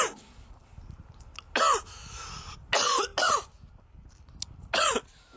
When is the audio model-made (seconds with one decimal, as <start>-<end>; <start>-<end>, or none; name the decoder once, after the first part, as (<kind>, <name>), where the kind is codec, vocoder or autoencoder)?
0.6-1.3 (vocoder, BigVGAN v2)